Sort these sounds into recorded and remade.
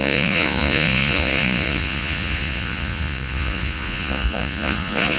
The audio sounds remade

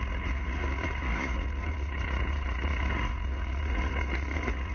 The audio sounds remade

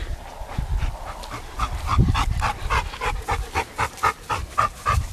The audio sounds recorded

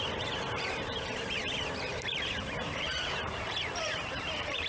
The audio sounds remade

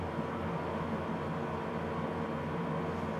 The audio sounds recorded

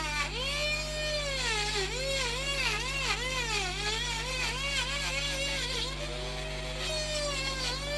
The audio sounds recorded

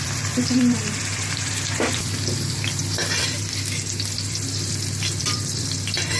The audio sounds remade